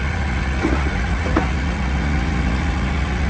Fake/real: fake